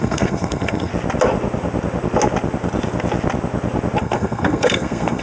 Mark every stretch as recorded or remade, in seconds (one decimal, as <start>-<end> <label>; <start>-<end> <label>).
0.0-0.9 remade; 0.9-4.0 recorded; 4.0-5.2 remade